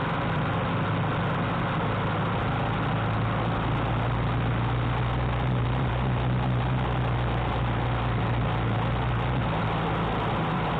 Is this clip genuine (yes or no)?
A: yes